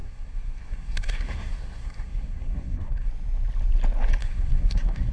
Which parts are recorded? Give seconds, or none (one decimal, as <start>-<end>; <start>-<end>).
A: 3.1-4.2